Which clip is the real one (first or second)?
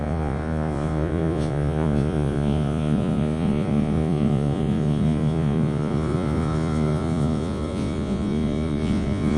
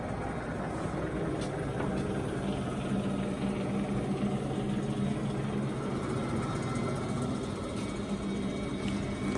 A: second